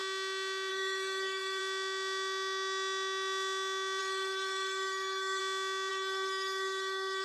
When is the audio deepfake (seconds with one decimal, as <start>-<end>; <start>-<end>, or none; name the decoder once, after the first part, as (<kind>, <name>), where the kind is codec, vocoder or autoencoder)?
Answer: 0.7-1.6 (codec, SNAC); 4.0-5.4; 5.9-7.2